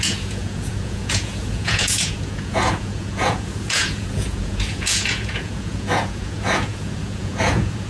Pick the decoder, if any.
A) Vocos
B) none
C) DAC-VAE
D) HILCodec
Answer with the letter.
A